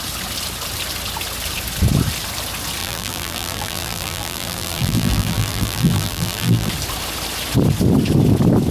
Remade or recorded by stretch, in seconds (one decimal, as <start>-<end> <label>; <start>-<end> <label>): 0.0-2.8 recorded; 2.8-6.7 remade; 6.7-8.7 recorded